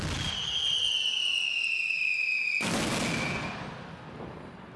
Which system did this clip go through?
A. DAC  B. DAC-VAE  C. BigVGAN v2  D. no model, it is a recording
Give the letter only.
D